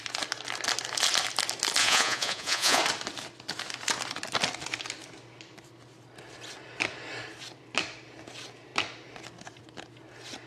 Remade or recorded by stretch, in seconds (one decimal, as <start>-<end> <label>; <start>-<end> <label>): 0.0-1.8 recorded; 1.8-2.8 remade; 2.8-10.5 recorded